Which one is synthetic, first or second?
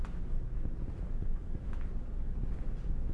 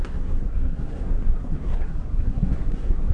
second